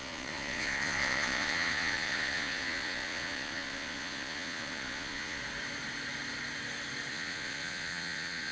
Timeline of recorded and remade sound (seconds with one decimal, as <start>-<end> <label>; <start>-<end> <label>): 0.0-5.4 remade; 5.4-7.1 recorded; 7.1-8.5 remade